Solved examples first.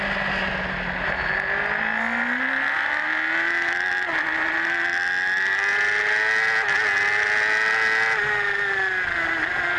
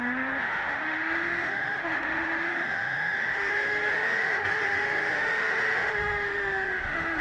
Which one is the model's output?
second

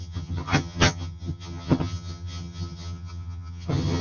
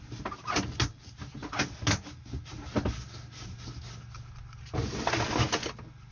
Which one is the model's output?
first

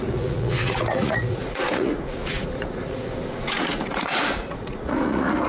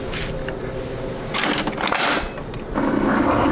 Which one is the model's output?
first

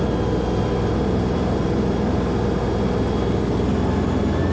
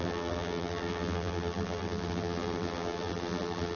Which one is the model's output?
second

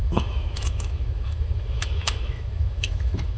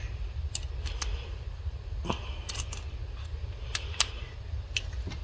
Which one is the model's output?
first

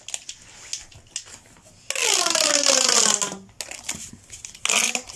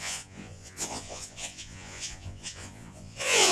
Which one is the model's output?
second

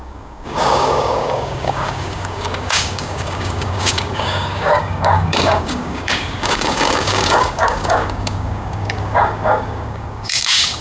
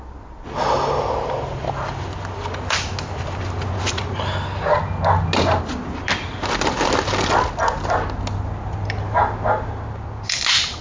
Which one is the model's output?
first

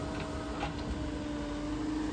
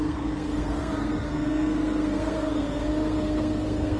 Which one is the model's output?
second